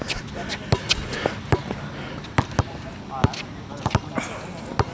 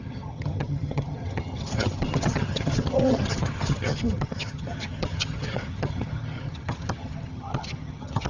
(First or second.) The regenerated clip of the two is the second